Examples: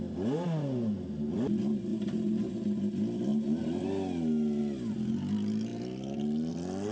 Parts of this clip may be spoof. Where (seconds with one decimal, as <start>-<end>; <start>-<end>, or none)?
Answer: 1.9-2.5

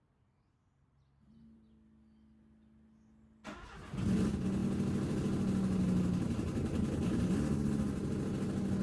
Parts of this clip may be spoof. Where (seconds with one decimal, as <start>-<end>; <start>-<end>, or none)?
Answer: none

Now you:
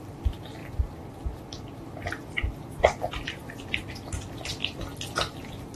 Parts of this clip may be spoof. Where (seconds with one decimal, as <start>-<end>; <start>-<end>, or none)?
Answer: 4.6-5.8

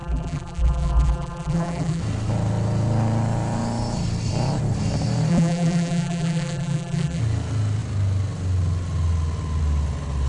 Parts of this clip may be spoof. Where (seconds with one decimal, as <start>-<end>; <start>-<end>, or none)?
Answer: 0.0-2.0; 5.3-7.2

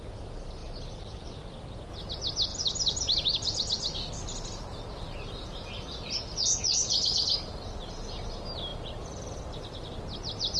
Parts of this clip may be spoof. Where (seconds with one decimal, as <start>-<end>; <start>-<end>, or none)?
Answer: 2.5-4.1; 8.7-9.9

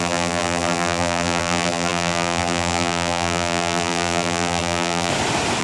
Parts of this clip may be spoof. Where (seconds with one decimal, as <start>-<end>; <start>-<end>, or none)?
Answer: 0.0-5.1